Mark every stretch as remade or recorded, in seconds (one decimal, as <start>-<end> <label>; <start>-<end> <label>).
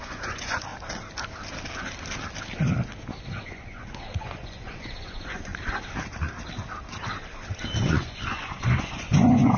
0.0-0.7 remade; 0.7-3.4 recorded; 3.4-5.5 remade; 5.5-7.8 recorded; 7.8-9.6 remade